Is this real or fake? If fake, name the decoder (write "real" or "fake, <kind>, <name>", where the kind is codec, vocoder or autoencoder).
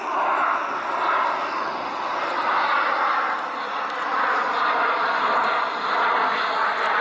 real